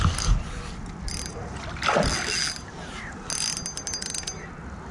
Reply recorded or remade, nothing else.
recorded